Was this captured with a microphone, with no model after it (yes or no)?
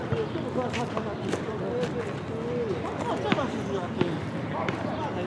yes